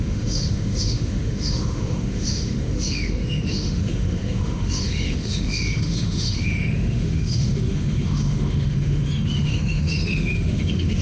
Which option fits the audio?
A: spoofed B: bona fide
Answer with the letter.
A